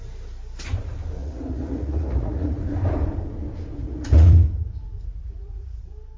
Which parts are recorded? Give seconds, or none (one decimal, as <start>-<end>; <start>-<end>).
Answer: 0.0-1.2; 2.6-3.8; 5.8-6.2